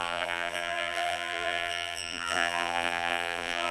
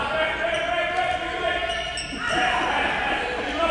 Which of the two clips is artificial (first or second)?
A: first